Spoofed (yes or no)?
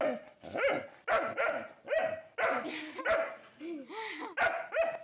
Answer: no